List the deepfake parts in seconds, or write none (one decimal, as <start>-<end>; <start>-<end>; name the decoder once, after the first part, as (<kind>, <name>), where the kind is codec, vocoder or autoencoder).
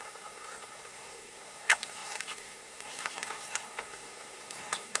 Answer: 0.0-5.0 (codec, SNAC)